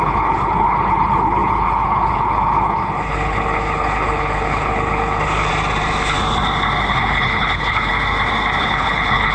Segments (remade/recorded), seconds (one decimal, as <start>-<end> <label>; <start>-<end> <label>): 0.0-5.5 remade; 5.5-6.9 recorded; 6.9-7.9 remade; 7.9-8.6 recorded; 8.6-9.3 remade